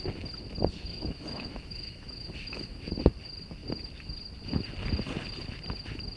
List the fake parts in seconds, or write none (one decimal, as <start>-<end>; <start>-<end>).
0.9-2.9

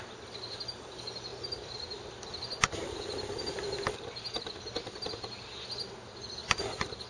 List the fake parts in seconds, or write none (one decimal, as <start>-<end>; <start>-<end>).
none

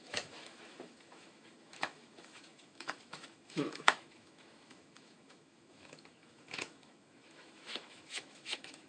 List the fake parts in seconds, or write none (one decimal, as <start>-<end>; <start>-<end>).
0.0-8.9